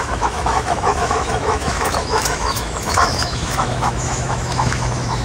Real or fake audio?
fake